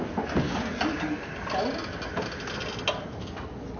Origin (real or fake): real